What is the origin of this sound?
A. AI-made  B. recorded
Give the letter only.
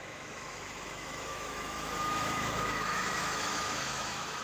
A